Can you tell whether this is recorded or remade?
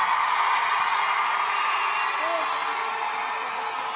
recorded